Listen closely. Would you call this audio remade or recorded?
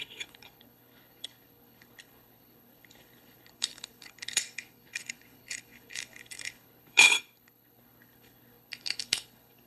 remade